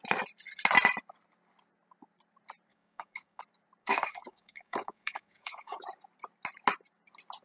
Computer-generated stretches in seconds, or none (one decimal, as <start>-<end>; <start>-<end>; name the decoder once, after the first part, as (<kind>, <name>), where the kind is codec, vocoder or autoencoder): 2.7-3.4 (codec, DAC); 3.8-5.8